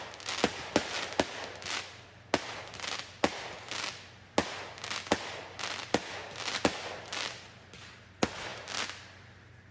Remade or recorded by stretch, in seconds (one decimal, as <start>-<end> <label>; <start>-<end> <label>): 0.0-9.7 recorded